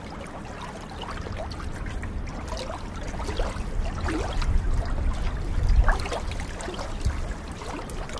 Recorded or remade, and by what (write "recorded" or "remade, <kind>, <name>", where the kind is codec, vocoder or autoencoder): recorded